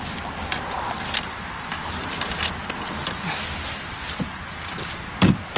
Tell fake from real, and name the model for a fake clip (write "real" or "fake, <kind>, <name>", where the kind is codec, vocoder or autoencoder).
real